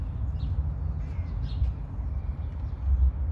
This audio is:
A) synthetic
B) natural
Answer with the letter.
B